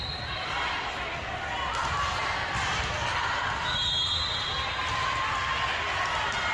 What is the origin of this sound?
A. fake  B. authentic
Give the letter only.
B